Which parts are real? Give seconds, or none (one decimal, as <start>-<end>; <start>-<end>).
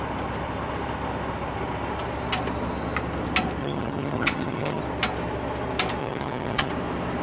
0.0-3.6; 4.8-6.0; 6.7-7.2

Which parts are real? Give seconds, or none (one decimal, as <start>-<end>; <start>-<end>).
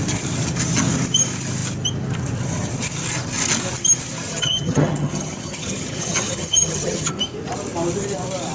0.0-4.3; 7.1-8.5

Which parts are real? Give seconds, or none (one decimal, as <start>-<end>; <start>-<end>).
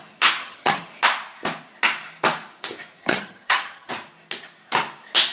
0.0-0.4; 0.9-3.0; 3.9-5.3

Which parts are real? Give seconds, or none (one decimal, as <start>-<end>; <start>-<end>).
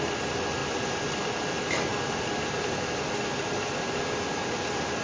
0.0-5.0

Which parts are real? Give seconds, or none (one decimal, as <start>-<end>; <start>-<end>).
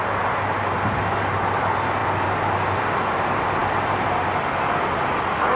0.0-5.5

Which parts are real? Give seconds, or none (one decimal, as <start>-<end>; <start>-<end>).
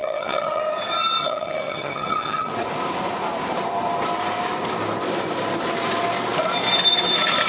0.6-1.2; 2.5-7.5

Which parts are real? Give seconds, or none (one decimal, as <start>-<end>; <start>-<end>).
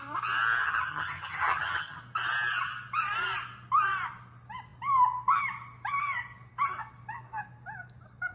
0.0-0.6; 2.0-8.3